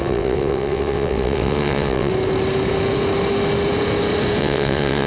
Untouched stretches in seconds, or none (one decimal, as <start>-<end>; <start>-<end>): 2.1-4.4